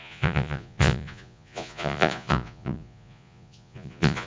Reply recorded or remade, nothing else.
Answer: remade